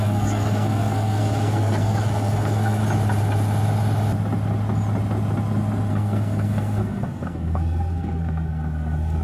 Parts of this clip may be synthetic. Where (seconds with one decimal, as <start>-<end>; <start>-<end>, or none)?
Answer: 0.0-2.8; 5.9-9.2